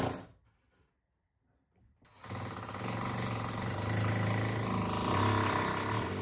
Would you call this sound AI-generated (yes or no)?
no